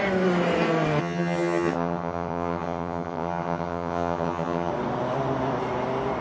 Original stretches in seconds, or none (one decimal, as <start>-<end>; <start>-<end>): 0.0-1.0; 4.7-6.2

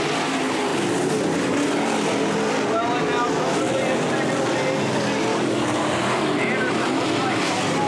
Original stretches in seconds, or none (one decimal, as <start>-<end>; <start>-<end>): 0.0-5.3; 6.2-7.9

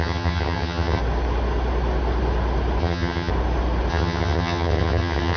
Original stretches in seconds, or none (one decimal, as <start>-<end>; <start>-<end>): 1.0-2.8; 3.3-3.9